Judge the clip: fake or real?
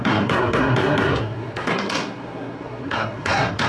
fake